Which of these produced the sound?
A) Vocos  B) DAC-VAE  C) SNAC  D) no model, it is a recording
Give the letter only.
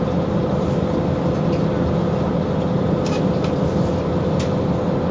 D